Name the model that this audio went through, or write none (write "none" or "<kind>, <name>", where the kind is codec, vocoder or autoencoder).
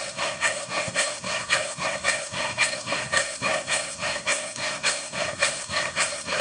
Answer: codec, SNAC